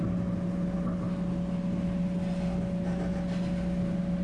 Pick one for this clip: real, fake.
real